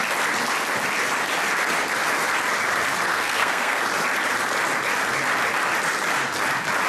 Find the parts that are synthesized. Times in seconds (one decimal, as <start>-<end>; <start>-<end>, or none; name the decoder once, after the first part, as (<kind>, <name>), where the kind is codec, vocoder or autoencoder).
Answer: 3.1-3.8 (codec, SNAC)